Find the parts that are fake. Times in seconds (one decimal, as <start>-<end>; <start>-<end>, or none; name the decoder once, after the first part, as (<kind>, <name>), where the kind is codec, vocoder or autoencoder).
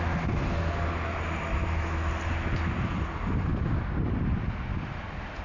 1.5-2.1 (autoencoder, DAC-VAE)